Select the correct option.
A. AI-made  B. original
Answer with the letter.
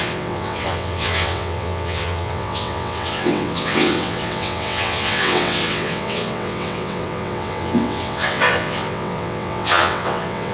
A